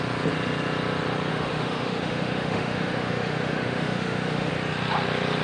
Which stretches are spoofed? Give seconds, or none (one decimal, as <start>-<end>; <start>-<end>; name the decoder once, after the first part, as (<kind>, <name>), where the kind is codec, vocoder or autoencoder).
1.3-4.5 (autoencoder, DAC-VAE)